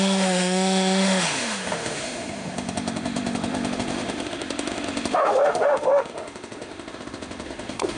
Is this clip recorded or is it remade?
remade